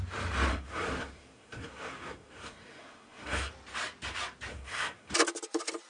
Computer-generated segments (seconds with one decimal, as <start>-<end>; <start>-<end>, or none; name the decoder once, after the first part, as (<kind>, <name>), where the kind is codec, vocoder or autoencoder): 0.5-3.5 (codec, SNAC); 4.5-5.1